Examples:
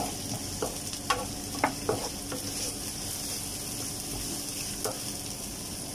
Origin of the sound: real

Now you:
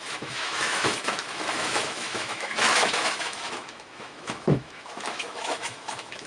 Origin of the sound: fake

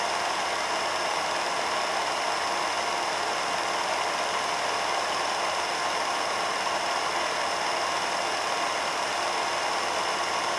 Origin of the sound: real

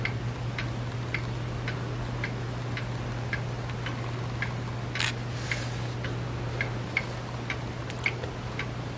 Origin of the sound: real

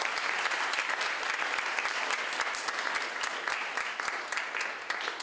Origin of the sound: real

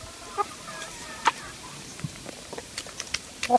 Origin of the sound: fake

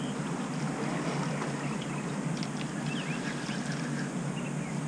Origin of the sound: real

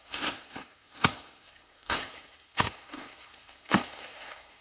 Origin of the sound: fake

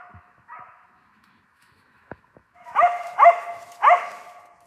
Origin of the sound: fake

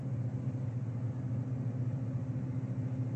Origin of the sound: real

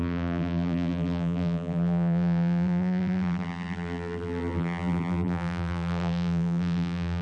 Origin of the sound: fake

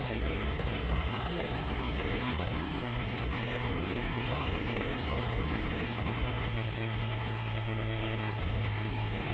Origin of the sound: fake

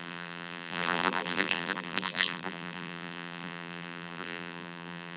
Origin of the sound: fake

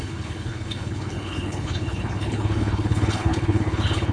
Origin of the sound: fake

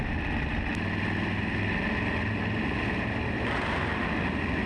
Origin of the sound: real